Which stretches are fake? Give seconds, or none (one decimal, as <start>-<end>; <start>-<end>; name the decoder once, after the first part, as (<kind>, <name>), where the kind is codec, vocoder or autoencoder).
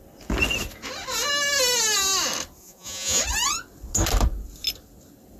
2.6-3.2 (vocoder, Vocos)